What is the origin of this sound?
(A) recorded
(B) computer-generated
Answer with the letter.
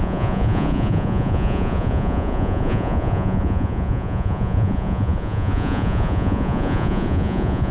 B